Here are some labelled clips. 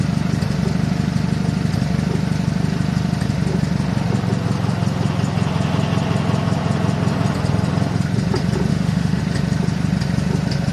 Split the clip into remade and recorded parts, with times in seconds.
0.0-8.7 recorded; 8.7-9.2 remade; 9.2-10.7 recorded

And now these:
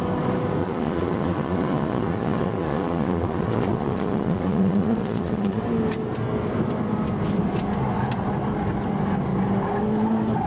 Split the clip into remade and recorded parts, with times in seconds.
0.0-0.6 recorded; 0.6-5.6 remade; 5.6-10.5 recorded

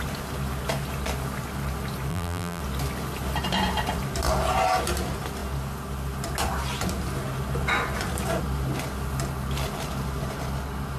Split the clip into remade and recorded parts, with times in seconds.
0.0-2.1 recorded; 2.1-2.6 remade; 2.6-11.0 recorded

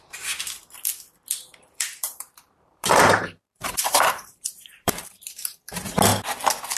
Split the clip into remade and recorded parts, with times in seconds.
0.0-1.5 recorded; 1.5-5.6 remade; 5.6-6.8 recorded